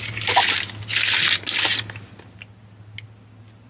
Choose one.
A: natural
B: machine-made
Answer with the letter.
A